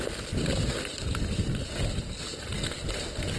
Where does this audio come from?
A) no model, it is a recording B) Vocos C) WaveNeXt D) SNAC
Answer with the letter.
A